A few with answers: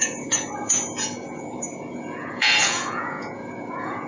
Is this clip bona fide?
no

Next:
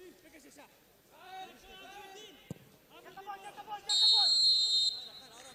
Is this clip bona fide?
yes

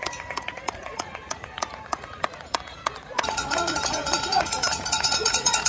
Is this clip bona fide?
no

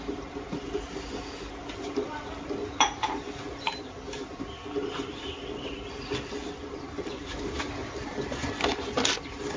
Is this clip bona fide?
yes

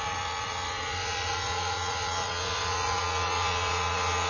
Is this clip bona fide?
no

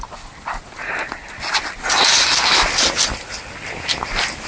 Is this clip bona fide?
yes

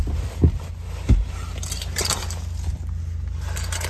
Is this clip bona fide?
yes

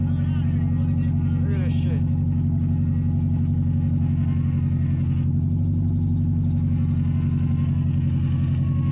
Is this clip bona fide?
yes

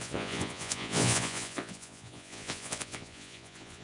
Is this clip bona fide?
no